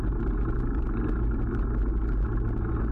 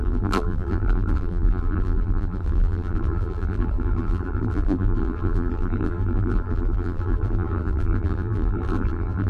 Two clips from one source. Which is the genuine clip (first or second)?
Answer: first